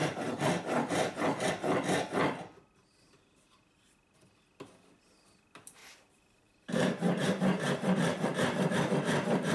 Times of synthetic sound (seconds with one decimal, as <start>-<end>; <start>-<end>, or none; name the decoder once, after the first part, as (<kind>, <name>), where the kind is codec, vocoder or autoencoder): 5.8-8.9 (vocoder, BigVGAN v2)